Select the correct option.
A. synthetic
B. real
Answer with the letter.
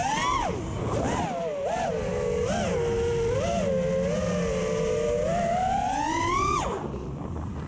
B